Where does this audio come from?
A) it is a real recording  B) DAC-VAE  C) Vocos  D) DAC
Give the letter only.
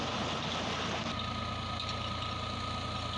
A